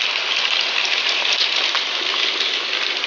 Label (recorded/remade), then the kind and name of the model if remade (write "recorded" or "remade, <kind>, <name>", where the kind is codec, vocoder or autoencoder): recorded